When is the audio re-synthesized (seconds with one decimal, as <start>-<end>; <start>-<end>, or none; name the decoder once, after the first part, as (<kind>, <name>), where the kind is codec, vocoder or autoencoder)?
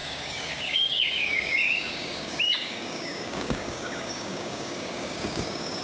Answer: 0.0-5.8 (codec, DAC)